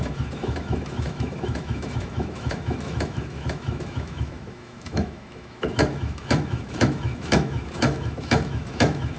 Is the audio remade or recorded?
remade